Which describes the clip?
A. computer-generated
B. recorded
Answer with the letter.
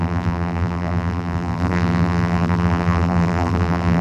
A